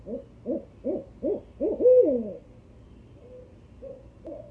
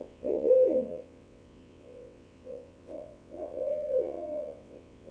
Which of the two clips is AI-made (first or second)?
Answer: second